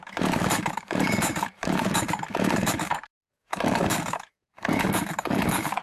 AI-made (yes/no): yes